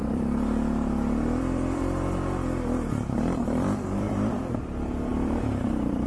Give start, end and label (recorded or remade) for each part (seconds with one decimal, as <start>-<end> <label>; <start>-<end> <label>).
0.0-2.4 remade; 2.4-3.4 recorded; 3.4-6.1 remade